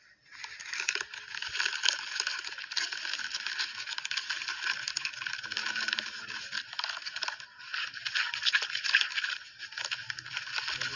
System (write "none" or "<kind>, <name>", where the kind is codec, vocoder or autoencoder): none